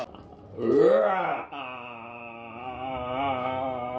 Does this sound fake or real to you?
real